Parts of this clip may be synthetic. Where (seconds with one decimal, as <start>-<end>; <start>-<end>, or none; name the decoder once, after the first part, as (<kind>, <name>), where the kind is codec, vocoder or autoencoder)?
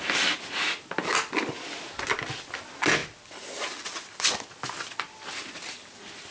none